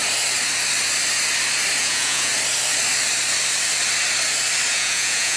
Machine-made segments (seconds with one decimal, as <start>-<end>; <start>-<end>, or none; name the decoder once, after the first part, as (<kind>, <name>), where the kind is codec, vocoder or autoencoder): 1.8-2.3 (vocoder, Vocos); 4.7-5.4